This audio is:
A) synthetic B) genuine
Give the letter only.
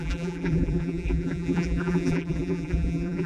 A